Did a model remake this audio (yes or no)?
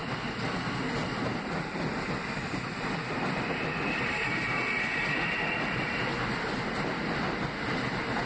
no